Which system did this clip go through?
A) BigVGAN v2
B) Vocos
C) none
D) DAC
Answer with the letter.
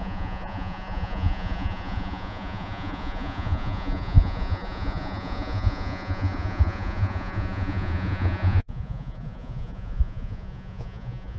B